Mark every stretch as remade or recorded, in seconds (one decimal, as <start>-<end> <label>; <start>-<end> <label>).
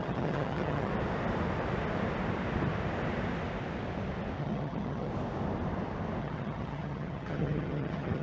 0.0-0.9 remade; 0.9-4.4 recorded; 4.4-5.1 remade; 5.1-6.2 recorded; 6.2-8.2 remade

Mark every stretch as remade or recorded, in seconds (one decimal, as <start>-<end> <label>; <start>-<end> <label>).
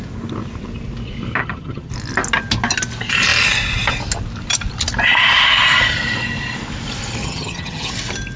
0.0-1.4 recorded; 1.4-1.9 remade; 1.9-7.2 recorded; 7.2-7.9 remade; 7.9-8.4 recorded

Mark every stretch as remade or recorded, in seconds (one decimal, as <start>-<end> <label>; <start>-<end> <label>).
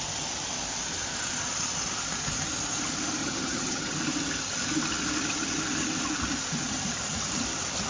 0.0-3.2 recorded; 3.2-4.0 remade; 4.0-7.9 recorded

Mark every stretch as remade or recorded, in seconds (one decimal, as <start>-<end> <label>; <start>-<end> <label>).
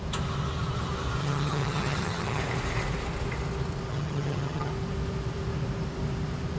0.0-1.2 recorded; 1.2-2.4 remade; 2.4-3.9 recorded; 3.9-4.7 remade; 4.7-6.6 recorded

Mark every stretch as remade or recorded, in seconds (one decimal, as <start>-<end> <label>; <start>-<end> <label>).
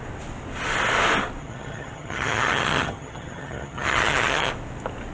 0.0-1.4 recorded; 1.4-4.5 remade; 4.5-5.1 recorded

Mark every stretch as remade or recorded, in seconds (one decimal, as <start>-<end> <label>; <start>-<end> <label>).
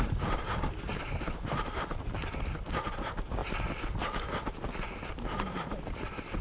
0.0-6.4 recorded